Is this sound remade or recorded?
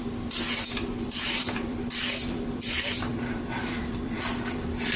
remade